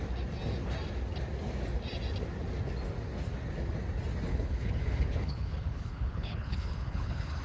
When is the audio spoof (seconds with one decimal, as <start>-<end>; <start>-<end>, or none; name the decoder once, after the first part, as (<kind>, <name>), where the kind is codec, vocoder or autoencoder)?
4.3-7.4 (codec, HILCodec)

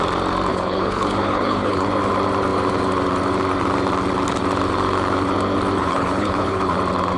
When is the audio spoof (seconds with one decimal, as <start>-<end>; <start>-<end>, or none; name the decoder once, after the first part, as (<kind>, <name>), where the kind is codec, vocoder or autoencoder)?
0.5-1.9 (codec, HILCodec); 5.8-6.7

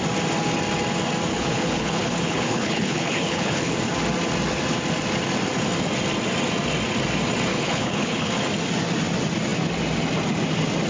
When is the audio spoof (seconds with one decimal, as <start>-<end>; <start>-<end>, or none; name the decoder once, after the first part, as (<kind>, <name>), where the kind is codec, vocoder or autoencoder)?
1.3-3.7 (codec, HILCodec); 7.5-8.3

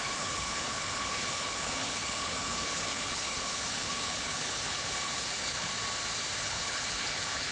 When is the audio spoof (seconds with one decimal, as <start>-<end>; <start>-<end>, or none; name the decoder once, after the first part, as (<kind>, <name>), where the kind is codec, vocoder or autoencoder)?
0.0-5.7 (codec, HILCodec); 6.4-7.5

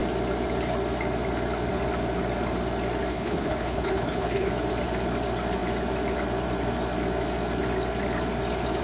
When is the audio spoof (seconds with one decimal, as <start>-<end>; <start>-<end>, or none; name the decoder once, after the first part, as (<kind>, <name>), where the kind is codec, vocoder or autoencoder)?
3.1-4.5 (codec, HILCodec)

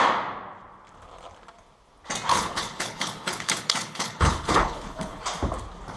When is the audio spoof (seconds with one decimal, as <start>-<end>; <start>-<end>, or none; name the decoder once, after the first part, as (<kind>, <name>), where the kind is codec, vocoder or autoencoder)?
2.3-5.2 (codec, HILCodec)